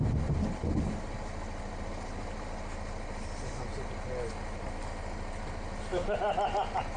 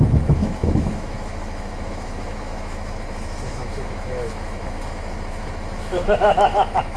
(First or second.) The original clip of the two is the first